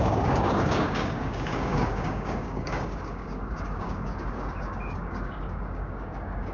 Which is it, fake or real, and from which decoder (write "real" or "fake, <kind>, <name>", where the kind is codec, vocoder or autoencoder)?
fake, codec, DAC